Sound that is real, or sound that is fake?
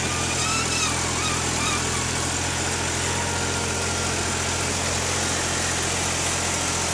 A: real